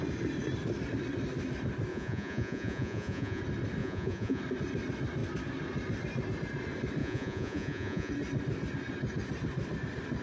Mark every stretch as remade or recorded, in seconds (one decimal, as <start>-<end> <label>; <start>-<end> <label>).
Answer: 0.0-1.9 recorded; 1.9-3.4 remade; 3.4-3.8 recorded; 3.8-4.4 remade; 4.4-7.0 recorded; 7.0-8.1 remade; 8.1-10.2 recorded